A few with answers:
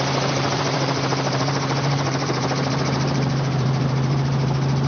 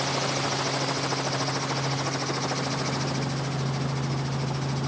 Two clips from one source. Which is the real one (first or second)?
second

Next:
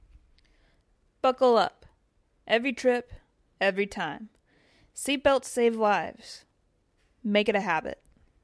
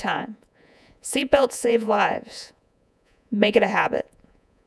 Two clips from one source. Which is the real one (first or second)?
first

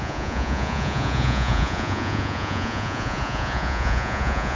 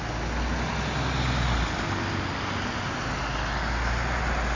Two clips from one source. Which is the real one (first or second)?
second